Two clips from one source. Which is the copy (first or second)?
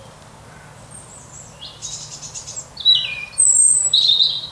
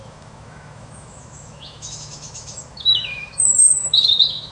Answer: second